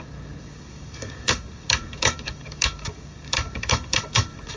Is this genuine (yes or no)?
no